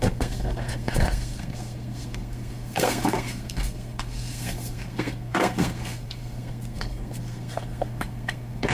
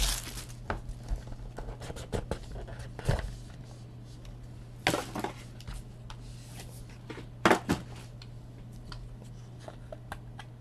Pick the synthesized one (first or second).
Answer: first